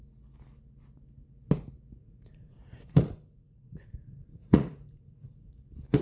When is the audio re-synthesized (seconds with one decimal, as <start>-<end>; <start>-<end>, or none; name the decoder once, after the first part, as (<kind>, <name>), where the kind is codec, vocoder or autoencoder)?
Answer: 2.0-5.5 (vocoder, Vocos)